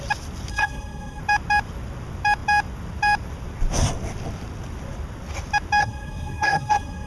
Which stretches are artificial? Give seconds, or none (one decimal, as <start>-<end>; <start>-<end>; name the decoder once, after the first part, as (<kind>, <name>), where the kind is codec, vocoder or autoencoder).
0.5-1.2 (codec, SNAC); 5.8-7.1